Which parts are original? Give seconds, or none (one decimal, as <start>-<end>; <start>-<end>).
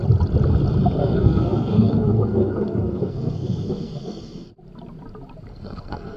0.0-1.0; 4.5-5.5